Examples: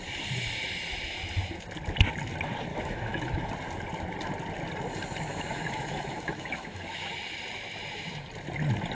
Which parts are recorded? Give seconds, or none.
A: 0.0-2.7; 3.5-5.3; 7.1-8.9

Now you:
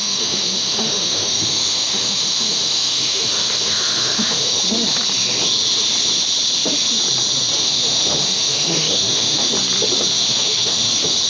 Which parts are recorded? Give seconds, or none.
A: 4.6-7.6; 9.5-10.1; 10.9-11.3

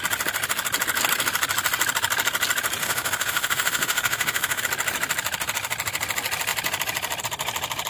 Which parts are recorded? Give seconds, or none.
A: 0.0-2.8; 4.6-7.9